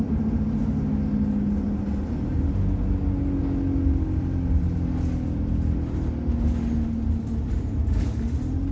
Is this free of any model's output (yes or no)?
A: yes